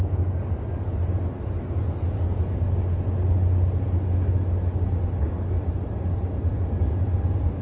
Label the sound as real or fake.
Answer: real